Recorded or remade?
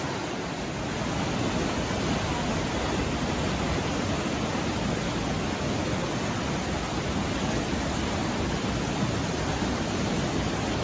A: recorded